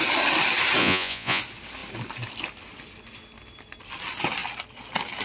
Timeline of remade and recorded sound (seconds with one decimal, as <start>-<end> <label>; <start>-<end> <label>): 0.0-0.8 recorded; 0.8-1.4 remade; 1.4-5.2 recorded